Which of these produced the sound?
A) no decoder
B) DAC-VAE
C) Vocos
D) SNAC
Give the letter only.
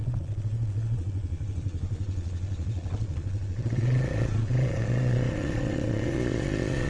C